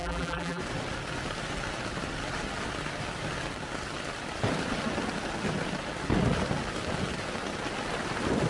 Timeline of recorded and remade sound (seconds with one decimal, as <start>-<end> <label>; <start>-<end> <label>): 0.0-0.6 remade; 0.6-8.5 recorded